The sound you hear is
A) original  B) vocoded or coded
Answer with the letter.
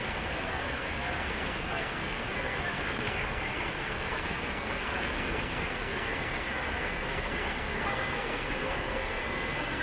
B